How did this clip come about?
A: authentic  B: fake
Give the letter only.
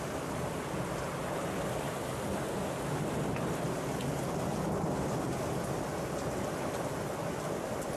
A